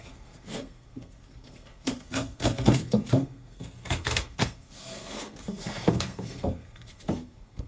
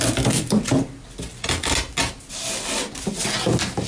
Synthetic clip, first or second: first